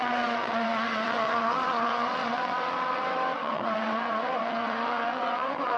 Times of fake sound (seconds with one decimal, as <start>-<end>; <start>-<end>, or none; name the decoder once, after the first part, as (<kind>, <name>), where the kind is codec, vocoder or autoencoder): 0.0-5.8 (vocoder, WaveNeXt)